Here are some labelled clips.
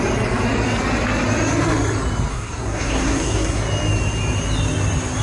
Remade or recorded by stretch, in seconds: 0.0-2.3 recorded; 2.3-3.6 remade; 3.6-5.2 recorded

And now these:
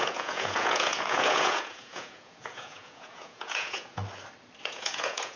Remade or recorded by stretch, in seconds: 0.0-4.0 remade; 4.0-4.6 recorded; 4.6-5.4 remade

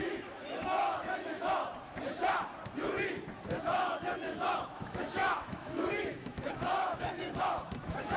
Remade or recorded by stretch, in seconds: 0.0-1.6 remade; 1.6-3.6 recorded; 3.6-8.2 remade

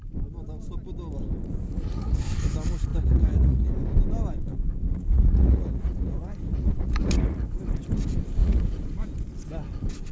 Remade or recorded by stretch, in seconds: 0.0-1.4 recorded; 1.4-2.2 remade; 2.2-2.9 recorded; 2.9-3.7 remade; 3.7-4.5 recorded; 4.5-7.6 remade; 7.6-8.4 recorded; 8.4-9.2 remade; 9.2-10.1 recorded

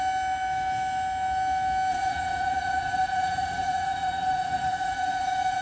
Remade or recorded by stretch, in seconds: 0.0-1.9 recorded; 1.9-5.6 remade

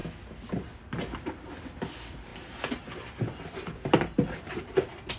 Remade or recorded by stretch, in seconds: 0.0-5.2 recorded

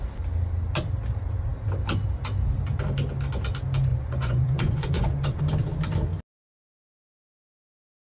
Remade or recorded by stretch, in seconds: 0.0-3.9 recorded; 3.9-5.4 remade; 5.4-8.1 recorded